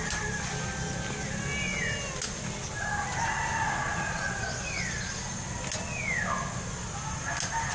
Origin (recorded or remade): recorded